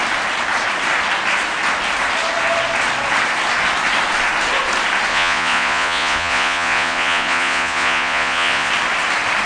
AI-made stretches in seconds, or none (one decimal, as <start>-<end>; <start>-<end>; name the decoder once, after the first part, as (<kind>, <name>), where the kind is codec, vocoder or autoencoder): 5.1-8.7 (vocoder, Vocos)